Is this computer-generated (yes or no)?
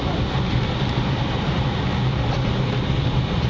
no